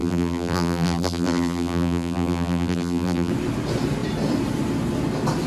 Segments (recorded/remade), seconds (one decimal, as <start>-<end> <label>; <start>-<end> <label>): 0.0-3.3 remade; 3.3-5.5 recorded